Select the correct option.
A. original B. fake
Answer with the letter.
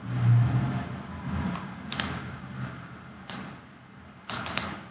A